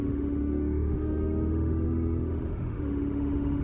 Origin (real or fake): fake